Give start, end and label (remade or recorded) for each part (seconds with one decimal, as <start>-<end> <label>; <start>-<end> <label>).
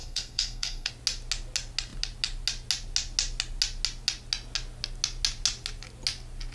0.0-0.9 remade; 0.9-6.5 recorded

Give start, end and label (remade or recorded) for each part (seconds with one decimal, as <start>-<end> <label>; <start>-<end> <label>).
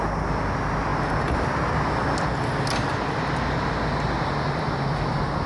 0.0-5.5 recorded